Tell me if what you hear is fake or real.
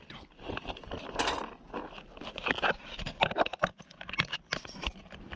real